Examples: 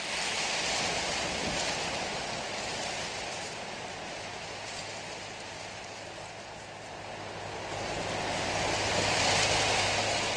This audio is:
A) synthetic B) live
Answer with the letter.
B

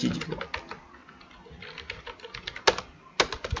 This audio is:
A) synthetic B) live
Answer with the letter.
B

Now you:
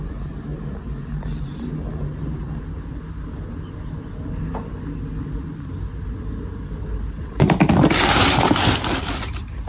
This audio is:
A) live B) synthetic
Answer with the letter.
A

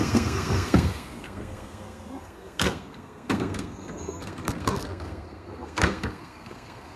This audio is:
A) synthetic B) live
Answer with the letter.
A